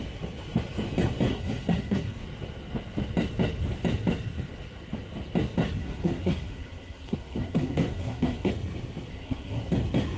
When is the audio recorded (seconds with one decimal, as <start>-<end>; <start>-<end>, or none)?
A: 0.0-1.3; 2.2-5.8; 8.5-9.1; 9.7-10.2